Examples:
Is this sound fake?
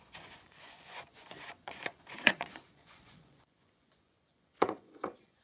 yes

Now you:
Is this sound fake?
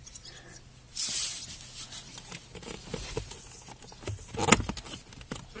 no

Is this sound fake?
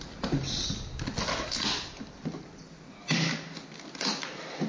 no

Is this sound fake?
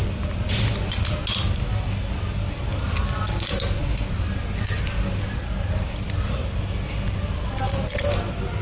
no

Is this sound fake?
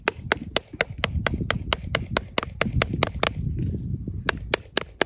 no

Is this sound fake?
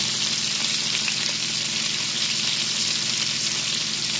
no